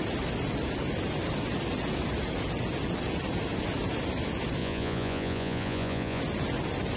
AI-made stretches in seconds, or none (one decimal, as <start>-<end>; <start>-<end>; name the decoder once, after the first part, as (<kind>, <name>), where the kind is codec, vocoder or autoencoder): 4.6-6.2 (vocoder, Vocos)